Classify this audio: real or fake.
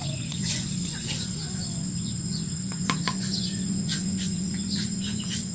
fake